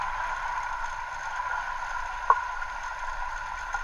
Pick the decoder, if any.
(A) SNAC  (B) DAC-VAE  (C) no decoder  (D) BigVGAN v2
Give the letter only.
C